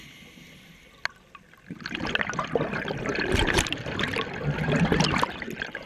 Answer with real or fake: real